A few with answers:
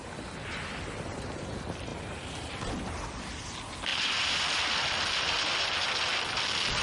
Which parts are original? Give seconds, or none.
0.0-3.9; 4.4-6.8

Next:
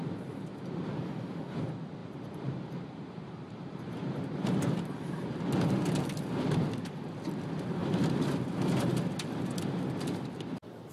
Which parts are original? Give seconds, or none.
0.0-2.0; 5.4-7.8; 9.1-10.9

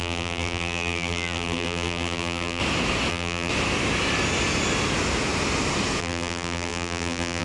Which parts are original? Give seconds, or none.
2.6-3.1; 3.5-6.0

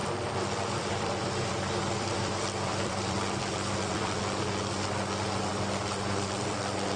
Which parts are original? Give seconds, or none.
4.2-5.5; 6.6-7.0

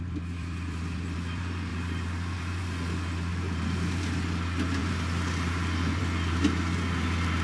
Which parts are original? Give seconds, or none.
0.0-1.7; 2.6-3.3; 4.0-4.8; 6.0-7.4

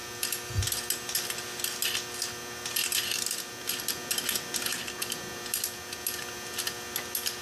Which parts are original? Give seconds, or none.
0.0-7.4

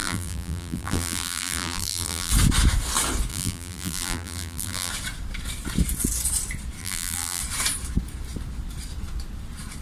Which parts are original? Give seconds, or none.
2.3-3.3; 4.9-6.8; 7.4-9.8